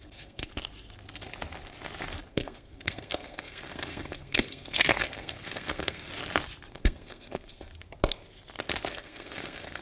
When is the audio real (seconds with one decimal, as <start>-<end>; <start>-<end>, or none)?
0.5-2.3; 6.1-6.7; 7.7-8.9